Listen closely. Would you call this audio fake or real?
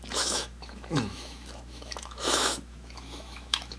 fake